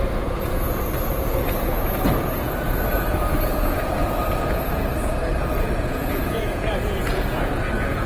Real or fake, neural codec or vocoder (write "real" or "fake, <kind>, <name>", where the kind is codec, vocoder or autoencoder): fake, vocoder, Vocos